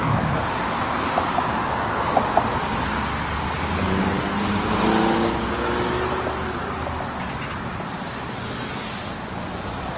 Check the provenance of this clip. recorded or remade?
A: recorded